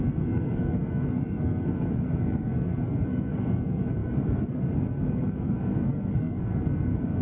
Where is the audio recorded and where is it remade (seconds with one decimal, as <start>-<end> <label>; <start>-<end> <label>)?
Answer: 0.0-7.2 remade